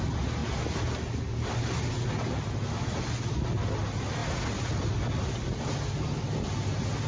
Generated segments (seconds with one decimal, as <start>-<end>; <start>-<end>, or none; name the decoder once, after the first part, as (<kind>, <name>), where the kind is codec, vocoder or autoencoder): none